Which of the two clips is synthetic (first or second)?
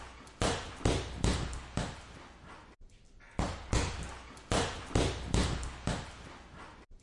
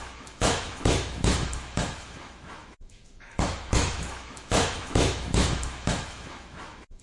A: second